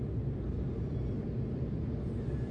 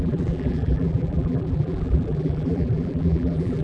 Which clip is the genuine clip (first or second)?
first